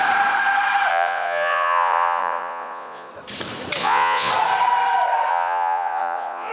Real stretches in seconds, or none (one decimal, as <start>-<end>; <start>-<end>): 0.0-0.9; 3.1-3.8; 4.3-5.3